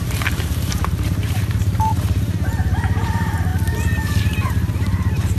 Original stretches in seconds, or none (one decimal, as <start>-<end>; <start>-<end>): 3.5-4.2

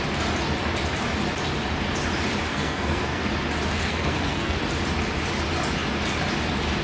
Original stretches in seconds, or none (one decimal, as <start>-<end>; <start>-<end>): 0.0-2.5; 3.3-3.7; 4.6-6.8

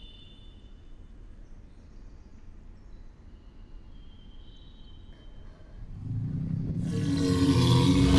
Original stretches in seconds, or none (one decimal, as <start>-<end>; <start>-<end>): 0.0-8.2

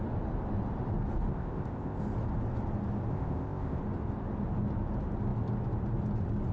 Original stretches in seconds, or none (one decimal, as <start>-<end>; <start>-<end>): 0.0-1.3; 2.0-3.1; 3.8-6.5

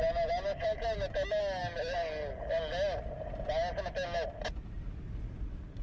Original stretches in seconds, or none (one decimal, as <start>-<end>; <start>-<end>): 0.0-5.8

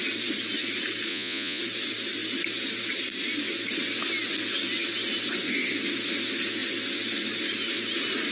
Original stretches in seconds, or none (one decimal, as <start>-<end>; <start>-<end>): 0.0-1.1; 1.6-8.3

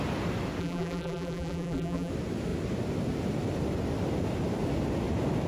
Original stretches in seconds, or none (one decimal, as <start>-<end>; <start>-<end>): 0.0-0.6; 2.1-5.5